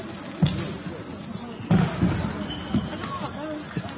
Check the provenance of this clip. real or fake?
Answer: real